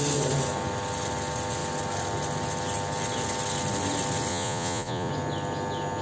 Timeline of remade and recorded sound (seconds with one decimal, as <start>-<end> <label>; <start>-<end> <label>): 0.0-4.3 recorded; 4.3-5.1 remade; 5.1-6.0 recorded

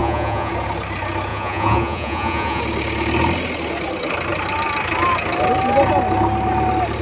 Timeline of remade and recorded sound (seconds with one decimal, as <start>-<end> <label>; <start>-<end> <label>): 0.0-0.5 remade; 0.5-1.3 recorded; 1.3-2.6 remade; 2.6-7.0 recorded

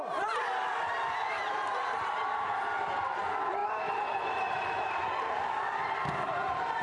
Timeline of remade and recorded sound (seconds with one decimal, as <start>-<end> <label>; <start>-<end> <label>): 0.0-6.8 recorded

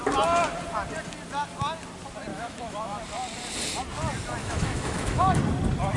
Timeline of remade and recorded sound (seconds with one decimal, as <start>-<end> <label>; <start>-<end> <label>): 0.0-2.3 recorded; 2.3-3.0 remade; 3.0-4.4 recorded; 4.4-5.4 remade; 5.4-6.0 recorded

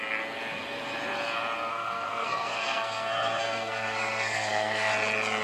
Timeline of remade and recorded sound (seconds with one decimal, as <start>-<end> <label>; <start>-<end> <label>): 0.0-1.7 recorded; 1.7-4.9 remade; 4.9-5.4 recorded